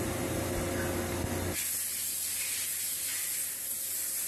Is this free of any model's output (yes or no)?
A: yes